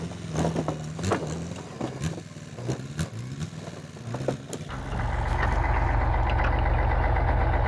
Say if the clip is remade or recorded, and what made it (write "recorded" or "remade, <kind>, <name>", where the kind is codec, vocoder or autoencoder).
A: recorded